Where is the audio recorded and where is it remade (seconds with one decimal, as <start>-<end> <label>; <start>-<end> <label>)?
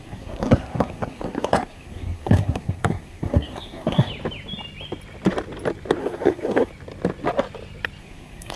0.0-4.1 remade; 4.1-6.0 recorded; 6.0-6.7 remade; 6.7-8.0 recorded; 8.0-8.6 remade